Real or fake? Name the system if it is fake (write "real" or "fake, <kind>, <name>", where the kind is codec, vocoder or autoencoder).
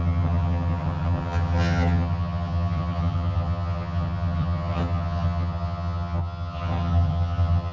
fake, vocoder, HiFi-GAN